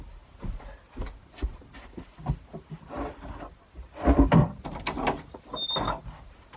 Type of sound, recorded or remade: recorded